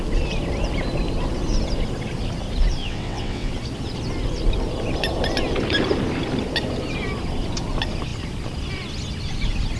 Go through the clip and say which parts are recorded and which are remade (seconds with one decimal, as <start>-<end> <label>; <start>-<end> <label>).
0.0-2.8 recorded; 2.8-3.5 remade; 3.5-9.8 recorded